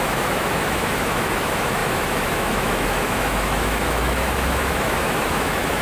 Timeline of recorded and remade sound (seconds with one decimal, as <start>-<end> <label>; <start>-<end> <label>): 0.0-5.8 remade